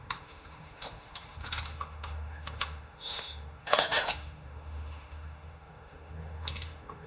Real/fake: fake